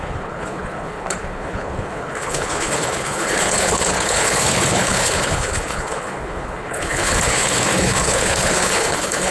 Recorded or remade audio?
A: remade